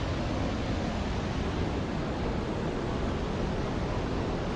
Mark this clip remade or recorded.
recorded